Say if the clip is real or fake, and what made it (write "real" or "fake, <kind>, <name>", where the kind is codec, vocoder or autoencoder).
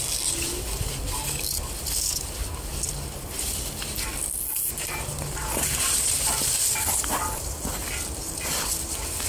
real